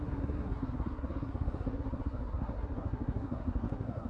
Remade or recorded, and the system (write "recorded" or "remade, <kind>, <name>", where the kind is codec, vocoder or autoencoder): remade, codec, SNAC